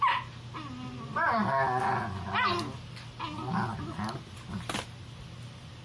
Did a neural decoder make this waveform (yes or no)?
no